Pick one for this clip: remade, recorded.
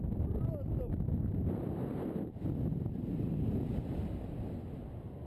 recorded